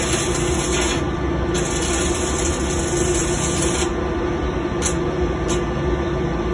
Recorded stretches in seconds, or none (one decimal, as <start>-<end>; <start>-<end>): 0.0-6.5